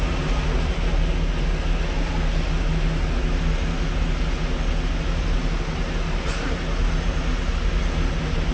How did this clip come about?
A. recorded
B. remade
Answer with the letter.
A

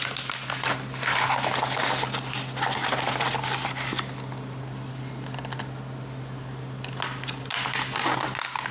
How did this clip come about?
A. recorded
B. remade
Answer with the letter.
A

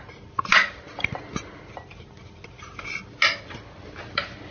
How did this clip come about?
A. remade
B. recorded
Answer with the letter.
B